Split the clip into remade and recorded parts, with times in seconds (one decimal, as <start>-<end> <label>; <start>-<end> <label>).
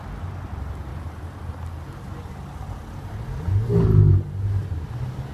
0.0-5.3 recorded